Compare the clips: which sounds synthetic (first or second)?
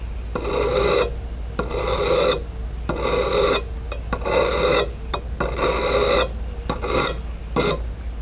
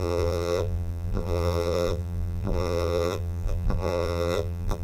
second